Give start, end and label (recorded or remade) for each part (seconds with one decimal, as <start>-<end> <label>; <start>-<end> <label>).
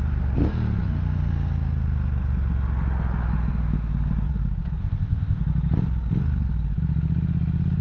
0.0-4.8 recorded; 4.8-5.4 remade; 5.4-7.8 recorded